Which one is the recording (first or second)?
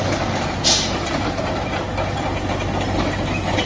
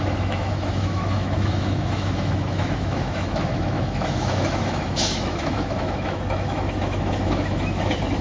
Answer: first